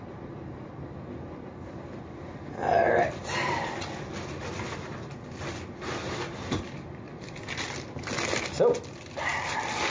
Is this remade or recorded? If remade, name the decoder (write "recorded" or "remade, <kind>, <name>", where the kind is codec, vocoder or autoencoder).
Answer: recorded